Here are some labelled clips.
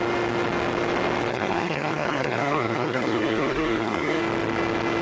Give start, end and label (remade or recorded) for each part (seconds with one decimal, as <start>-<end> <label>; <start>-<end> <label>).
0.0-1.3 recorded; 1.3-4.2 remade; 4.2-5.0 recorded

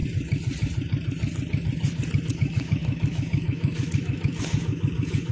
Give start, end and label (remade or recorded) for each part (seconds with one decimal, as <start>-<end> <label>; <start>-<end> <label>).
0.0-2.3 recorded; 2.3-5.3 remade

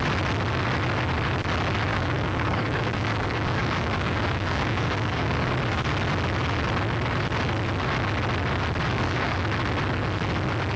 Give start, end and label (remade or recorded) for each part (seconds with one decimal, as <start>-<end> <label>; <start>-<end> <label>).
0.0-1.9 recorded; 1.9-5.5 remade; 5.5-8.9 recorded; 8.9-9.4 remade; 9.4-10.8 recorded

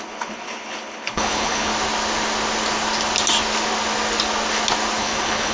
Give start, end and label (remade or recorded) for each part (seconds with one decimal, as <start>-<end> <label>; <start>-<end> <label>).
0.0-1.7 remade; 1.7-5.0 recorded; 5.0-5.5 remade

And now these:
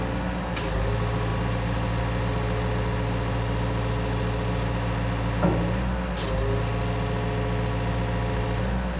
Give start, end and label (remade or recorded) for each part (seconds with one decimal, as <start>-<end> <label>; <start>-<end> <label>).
0.0-9.0 recorded